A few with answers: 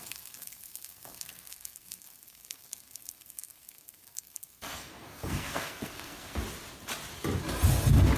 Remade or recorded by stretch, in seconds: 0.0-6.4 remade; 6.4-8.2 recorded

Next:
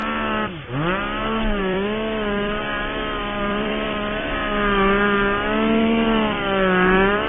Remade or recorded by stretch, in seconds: 0.0-1.6 recorded; 1.6-2.6 remade; 2.6-3.2 recorded; 3.2-4.4 remade; 4.4-5.8 recorded; 5.8-7.3 remade

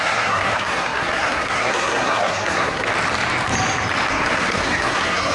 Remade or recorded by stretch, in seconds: 0.0-2.9 remade; 2.9-4.1 recorded; 4.1-5.3 remade

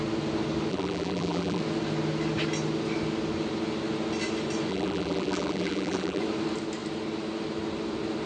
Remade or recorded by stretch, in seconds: 0.0-0.7 recorded; 0.7-1.6 remade; 1.6-4.7 recorded; 4.7-6.2 remade; 6.2-8.3 recorded

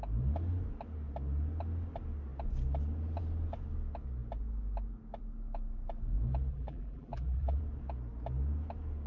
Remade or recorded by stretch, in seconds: 0.0-6.5 recorded; 6.5-7.6 remade; 7.6-9.1 recorded

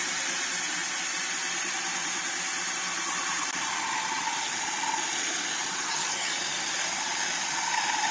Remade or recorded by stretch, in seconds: 0.0-5.8 recorded; 5.8-6.3 remade; 6.3-8.1 recorded

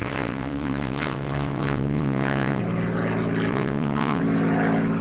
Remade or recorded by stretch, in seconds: 0.0-2.6 remade; 2.6-3.5 recorded; 3.5-4.2 remade; 4.2-5.0 recorded